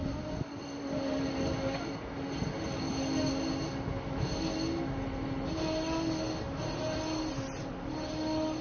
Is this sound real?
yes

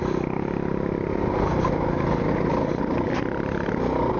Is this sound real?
yes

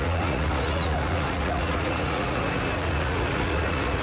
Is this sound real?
no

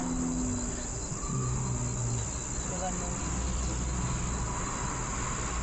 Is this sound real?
yes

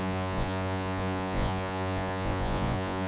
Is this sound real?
no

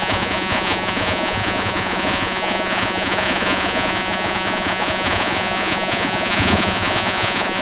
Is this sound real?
no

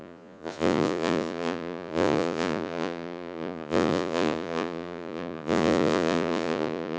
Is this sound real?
no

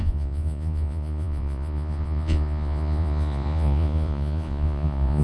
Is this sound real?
no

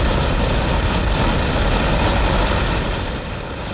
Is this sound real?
yes